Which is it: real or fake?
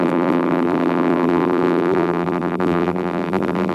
fake